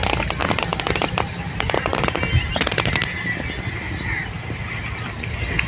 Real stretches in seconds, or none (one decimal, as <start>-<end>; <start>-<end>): 0.0-5.7

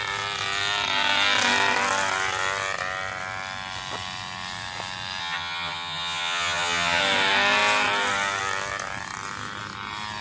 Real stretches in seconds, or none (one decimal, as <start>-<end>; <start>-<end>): 0.0-5.2; 7.0-10.2

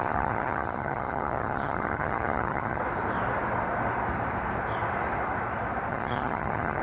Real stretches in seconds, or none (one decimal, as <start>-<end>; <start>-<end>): 2.8-5.9

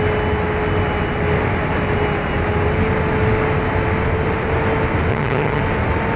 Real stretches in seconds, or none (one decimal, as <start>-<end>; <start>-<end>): 0.0-5.1; 5.6-6.2

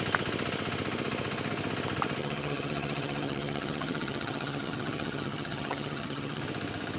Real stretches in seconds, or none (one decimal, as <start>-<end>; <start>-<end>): 0.0-2.2; 6.4-7.0

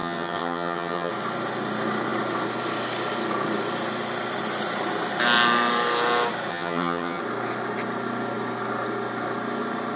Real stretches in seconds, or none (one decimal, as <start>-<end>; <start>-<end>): 1.1-6.5; 7.2-10.0

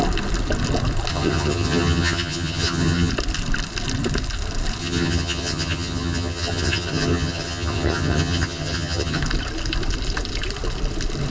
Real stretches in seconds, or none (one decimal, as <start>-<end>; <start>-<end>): 0.0-1.1; 3.1-4.8; 9.2-11.3

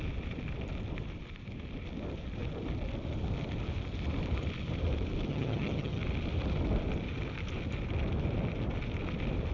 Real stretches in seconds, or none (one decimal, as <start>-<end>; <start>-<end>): 0.0-5.3; 6.0-9.5